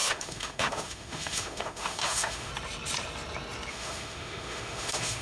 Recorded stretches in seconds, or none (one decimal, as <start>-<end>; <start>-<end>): 2.5-3.7